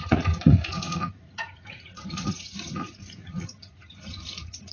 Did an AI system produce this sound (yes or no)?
yes